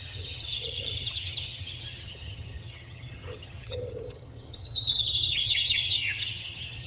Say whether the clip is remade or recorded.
remade